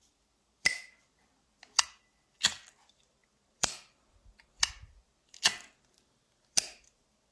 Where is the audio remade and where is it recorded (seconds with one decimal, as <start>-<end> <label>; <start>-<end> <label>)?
0.0-7.3 recorded